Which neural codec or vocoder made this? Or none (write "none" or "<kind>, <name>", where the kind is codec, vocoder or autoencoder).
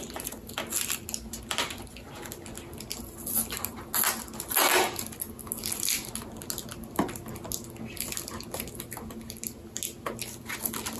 none